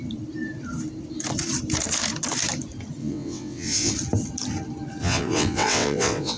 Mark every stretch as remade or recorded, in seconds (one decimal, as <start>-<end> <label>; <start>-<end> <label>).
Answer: 0.0-3.0 recorded; 3.0-3.9 remade; 3.9-5.0 recorded; 5.0-6.4 remade